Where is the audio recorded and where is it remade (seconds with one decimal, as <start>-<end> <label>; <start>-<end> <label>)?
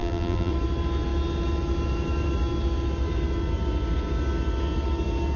0.0-0.5 remade; 0.5-5.4 recorded